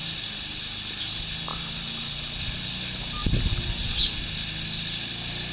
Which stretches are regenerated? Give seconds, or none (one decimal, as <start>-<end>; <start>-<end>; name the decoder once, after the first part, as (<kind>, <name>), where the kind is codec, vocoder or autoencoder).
none